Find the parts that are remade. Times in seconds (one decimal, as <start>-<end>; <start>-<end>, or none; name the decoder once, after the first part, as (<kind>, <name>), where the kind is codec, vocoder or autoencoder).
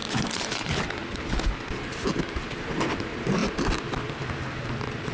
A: 0.0-1.0 (vocoder, BigVGAN v2); 1.7-3.4; 4.2-5.1